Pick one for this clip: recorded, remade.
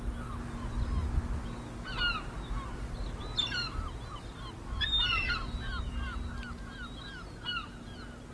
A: recorded